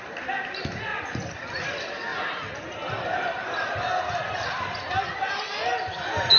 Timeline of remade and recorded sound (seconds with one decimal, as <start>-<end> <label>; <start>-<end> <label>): 0.0-6.4 recorded